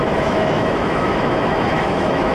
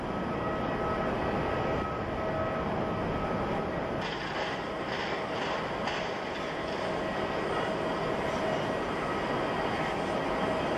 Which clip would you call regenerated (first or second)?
first